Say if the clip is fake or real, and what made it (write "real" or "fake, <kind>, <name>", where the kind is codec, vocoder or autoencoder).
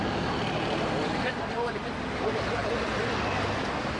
fake, vocoder, BigVGAN v2